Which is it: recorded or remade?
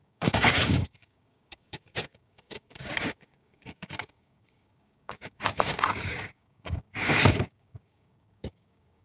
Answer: remade